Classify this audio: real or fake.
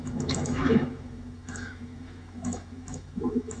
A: fake